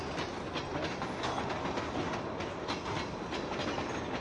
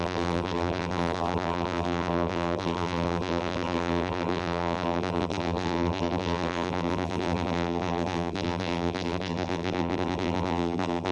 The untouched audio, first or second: first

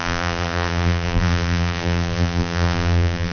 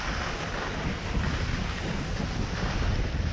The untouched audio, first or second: second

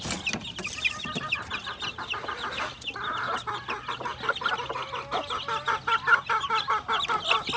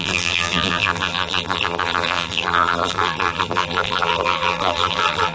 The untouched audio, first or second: first